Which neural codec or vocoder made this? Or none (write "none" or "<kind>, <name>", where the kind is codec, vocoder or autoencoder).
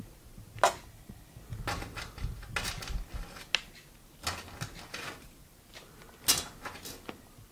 none